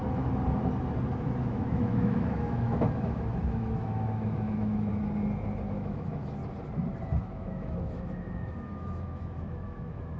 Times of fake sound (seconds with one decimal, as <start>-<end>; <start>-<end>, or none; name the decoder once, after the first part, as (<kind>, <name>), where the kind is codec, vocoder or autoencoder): 1.1-4.9 (autoencoder, DAC-VAE); 5.6-6.4; 7.2-10.2